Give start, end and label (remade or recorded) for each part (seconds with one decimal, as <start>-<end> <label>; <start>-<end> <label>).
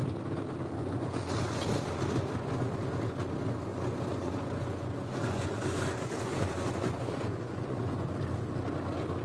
0.0-0.8 recorded; 0.8-1.3 remade; 1.3-3.7 recorded; 3.7-8.1 remade; 8.1-9.2 recorded